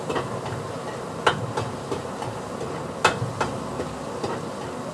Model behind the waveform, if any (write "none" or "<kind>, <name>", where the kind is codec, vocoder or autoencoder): none